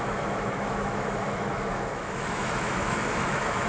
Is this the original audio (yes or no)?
no